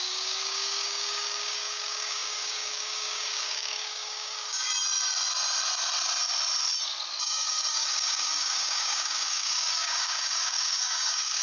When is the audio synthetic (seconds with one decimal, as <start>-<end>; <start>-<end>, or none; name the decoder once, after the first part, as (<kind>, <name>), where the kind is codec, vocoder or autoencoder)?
0.0-4.7 (codec, DAC); 7.2-11.4